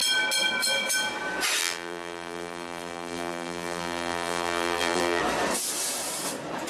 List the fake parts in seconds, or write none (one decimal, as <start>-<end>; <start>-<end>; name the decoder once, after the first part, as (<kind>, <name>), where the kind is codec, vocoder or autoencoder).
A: 1.6-5.2 (vocoder, BigVGAN v2)

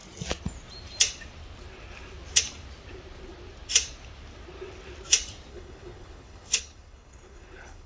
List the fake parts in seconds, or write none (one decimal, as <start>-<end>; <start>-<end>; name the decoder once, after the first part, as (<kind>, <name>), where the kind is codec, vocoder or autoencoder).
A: 5.5-7.9 (codec, HILCodec)

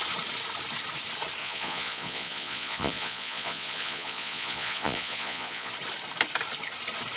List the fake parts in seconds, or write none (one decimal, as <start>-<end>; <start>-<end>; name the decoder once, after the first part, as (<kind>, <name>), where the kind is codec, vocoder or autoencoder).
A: 1.4-5.7 (vocoder, Vocos)

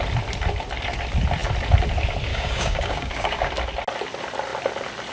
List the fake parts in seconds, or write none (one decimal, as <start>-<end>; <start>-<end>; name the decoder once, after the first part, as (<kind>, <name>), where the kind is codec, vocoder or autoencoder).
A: 2.3-3.5 (codec, DAC)